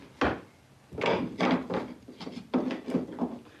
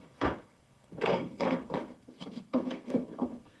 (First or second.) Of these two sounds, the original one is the first